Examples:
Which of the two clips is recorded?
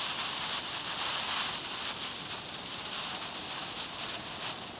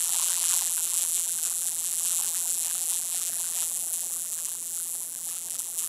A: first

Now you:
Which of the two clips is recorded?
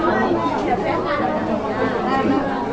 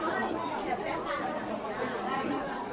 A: first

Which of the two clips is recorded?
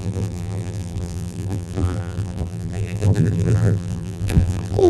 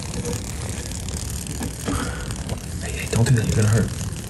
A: second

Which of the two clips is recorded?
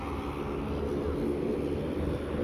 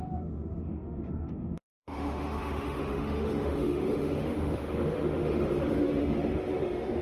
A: first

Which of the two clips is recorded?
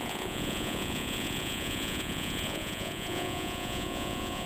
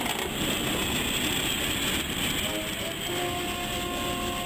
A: second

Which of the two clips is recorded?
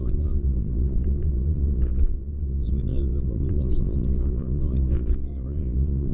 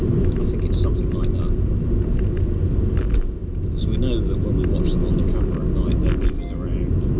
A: second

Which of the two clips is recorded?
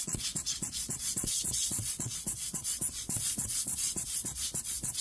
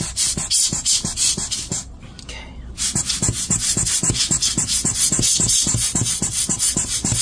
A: second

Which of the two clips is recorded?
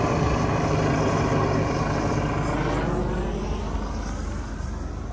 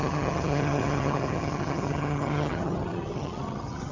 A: first